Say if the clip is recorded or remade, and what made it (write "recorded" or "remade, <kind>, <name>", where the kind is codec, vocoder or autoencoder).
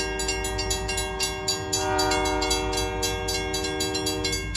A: recorded